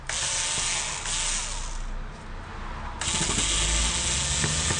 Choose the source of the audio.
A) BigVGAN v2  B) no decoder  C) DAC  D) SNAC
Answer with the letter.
B